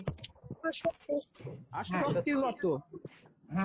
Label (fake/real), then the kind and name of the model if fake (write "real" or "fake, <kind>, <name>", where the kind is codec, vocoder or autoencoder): real